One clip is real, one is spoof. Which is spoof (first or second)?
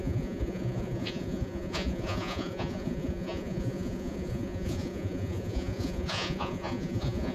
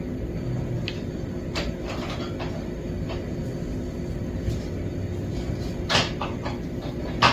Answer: first